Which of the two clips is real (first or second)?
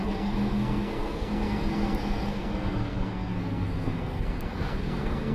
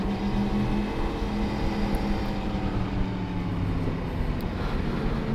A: second